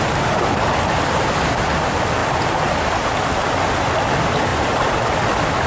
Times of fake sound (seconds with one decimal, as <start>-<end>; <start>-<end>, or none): none